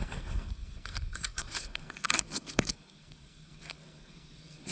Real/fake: fake